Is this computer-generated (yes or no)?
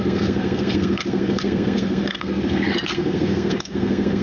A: yes